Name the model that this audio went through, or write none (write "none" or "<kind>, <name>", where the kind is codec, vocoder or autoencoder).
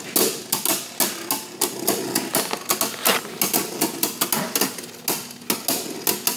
none